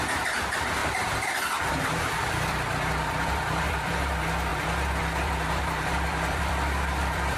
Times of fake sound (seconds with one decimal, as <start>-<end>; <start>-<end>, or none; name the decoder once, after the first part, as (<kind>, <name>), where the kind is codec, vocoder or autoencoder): 0.8-1.7 (vocoder, BigVGAN v2); 2.2-3.9; 4.5-7.4